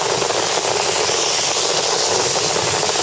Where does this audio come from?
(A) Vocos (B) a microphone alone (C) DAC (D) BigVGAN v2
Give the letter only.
B